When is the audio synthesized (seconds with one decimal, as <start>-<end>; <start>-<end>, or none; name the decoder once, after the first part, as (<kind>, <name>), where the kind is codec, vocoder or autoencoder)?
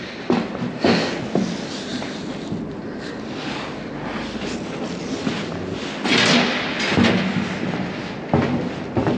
none